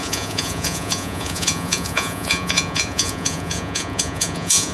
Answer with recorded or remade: remade